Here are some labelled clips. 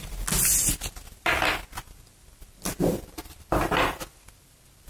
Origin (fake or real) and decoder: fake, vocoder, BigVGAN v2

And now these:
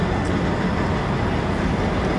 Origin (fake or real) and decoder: real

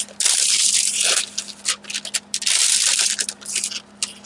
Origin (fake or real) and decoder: real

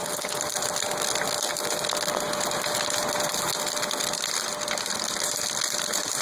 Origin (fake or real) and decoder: real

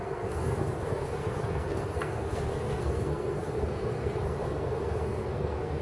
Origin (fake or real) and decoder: fake, codec, SNAC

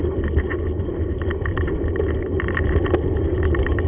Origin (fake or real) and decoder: real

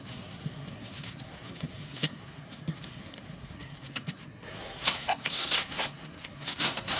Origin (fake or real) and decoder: fake, codec, SNAC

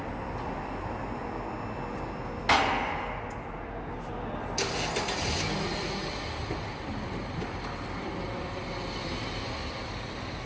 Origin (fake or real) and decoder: real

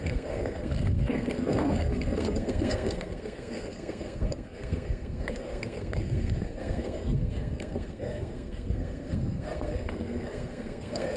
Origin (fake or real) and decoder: fake, codec, SNAC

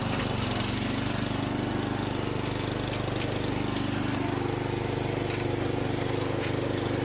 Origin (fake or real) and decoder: real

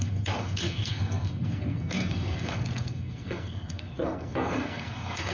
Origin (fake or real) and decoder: fake, codec, SNAC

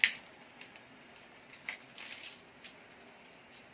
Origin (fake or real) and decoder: real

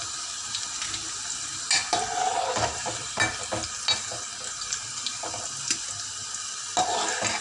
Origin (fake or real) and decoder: real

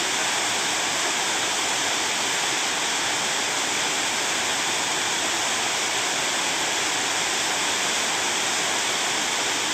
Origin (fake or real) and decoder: real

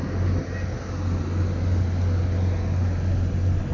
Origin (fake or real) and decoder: real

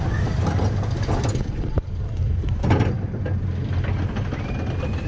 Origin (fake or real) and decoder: real